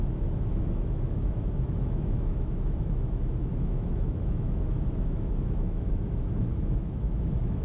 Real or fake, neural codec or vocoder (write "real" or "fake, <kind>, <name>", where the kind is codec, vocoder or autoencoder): fake, autoencoder, DAC-VAE